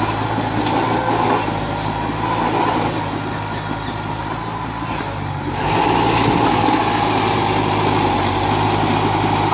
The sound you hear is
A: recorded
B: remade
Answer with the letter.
A